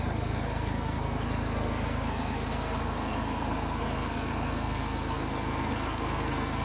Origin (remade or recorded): remade